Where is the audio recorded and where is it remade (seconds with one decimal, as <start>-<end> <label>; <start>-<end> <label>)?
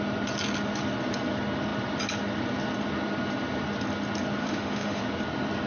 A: 0.0-4.4 recorded; 4.4-5.0 remade; 5.0-5.7 recorded